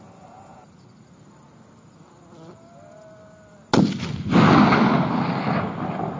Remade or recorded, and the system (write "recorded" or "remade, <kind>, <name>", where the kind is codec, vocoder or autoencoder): recorded